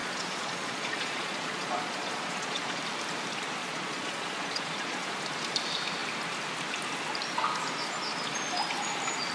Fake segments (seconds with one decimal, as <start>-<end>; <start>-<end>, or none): 0.0-2.8; 3.6-5.2